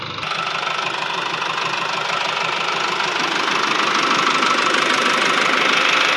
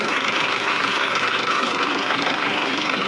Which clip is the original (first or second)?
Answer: first